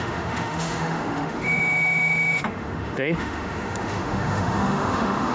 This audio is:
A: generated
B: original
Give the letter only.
A